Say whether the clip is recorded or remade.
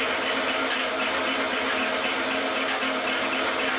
recorded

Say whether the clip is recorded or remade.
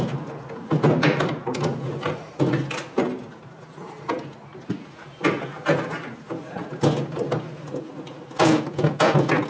recorded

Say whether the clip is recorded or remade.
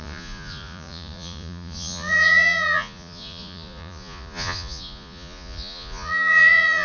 remade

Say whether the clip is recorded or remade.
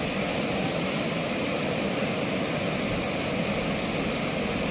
recorded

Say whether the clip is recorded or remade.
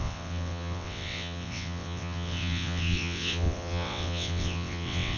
remade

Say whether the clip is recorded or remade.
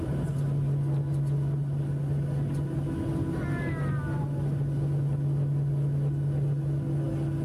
recorded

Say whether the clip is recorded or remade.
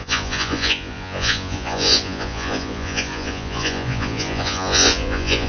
remade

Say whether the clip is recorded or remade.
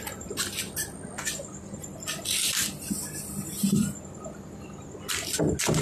recorded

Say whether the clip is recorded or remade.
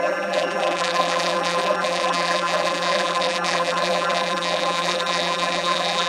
remade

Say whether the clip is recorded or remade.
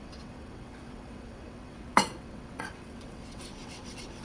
remade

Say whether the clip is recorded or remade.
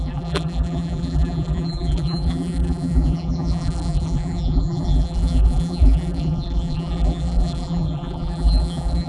remade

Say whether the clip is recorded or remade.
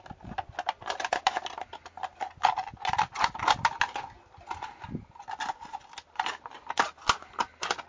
recorded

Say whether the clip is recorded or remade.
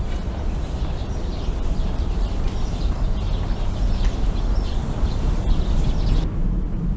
recorded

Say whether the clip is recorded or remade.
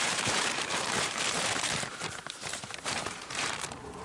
remade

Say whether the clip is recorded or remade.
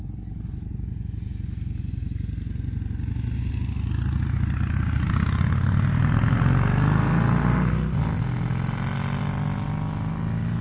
recorded